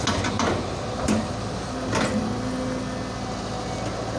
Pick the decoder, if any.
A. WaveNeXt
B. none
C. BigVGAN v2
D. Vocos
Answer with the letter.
B